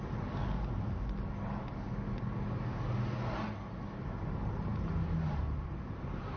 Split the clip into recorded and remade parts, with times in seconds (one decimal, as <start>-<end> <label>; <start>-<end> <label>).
0.0-0.4 remade; 0.4-4.2 recorded; 4.2-4.7 remade; 4.7-5.4 recorded; 5.4-6.4 remade